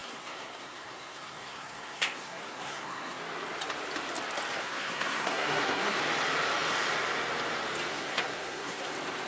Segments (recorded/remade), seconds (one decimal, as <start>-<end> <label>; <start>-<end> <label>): 0.0-3.2 remade; 3.2-4.6 recorded; 4.6-6.0 remade; 6.0-7.9 recorded; 7.9-8.9 remade; 8.9-9.3 recorded